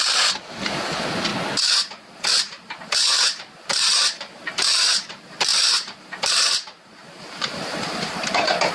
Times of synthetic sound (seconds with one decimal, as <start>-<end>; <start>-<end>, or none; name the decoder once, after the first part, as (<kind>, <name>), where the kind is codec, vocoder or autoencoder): 0.0-1.3 (vocoder, BigVGAN v2); 1.9-8.7